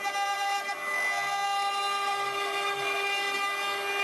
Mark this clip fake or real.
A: real